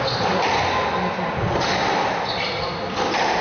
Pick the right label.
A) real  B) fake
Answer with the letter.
A